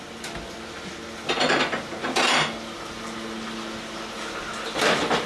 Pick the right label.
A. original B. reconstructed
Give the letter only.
A